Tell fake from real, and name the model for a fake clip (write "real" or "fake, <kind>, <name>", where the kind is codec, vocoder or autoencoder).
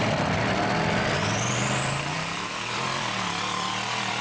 fake, vocoder, BigVGAN v2